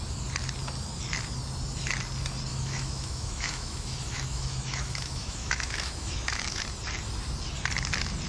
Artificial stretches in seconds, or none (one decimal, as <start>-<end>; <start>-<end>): 2.5-6.6